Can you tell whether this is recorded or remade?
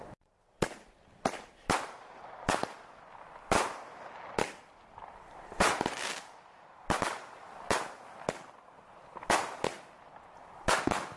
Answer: recorded